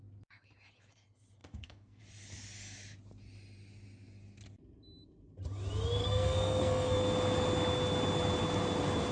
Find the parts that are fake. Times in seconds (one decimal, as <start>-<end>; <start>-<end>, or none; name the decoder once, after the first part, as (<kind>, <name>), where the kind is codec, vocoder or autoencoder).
1.4-2.0 (codec, SNAC); 6.0-7.0